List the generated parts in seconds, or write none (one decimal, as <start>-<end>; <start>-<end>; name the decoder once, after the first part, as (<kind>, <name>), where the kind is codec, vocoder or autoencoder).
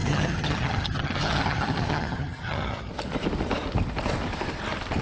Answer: 0.0-2.9 (vocoder, HiFi-GAN)